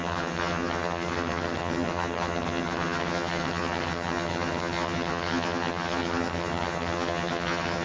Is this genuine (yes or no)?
no